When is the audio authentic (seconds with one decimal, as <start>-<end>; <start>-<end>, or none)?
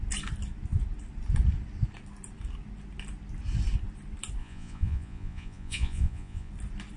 0.0-4.4; 6.5-7.0